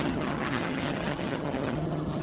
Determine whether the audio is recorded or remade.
remade